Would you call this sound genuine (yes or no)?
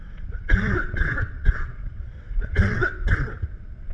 no